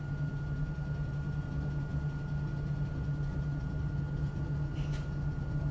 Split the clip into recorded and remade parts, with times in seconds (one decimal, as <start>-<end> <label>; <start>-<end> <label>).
0.0-5.7 recorded